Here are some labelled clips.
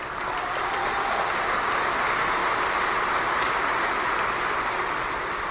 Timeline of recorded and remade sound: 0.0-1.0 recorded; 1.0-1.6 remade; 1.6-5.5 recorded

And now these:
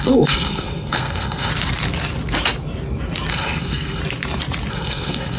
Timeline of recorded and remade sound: 0.0-1.5 remade; 1.5-3.3 recorded; 3.3-4.0 remade; 4.0-4.7 recorded; 4.7-5.4 remade

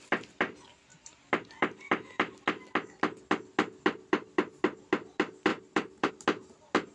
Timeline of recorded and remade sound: 0.0-5.5 recorded; 5.5-6.1 remade; 6.1-6.9 recorded

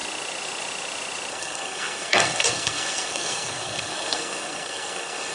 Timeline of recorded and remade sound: 0.0-1.3 recorded; 1.3-5.3 remade

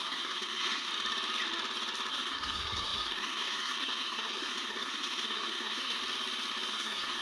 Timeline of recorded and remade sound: 0.0-0.9 remade; 0.9-2.1 recorded; 2.1-6.0 remade; 6.0-6.7 recorded; 6.7-7.2 remade

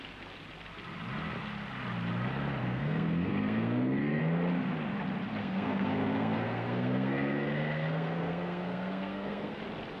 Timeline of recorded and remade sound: 0.0-2.6 recorded; 2.6-4.2 remade; 4.2-5.4 recorded; 5.4-9.6 remade; 9.6-10.0 recorded